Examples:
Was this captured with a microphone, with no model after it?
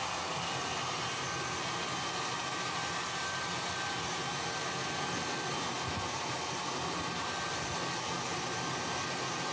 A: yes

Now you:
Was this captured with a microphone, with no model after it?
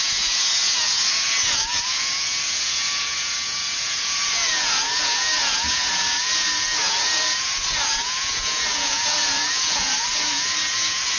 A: no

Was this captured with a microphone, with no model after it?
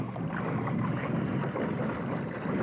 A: yes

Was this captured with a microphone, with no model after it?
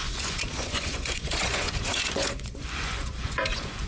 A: no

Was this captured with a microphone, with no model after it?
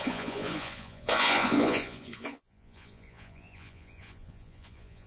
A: no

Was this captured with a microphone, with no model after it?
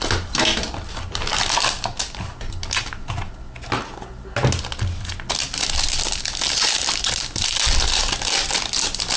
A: yes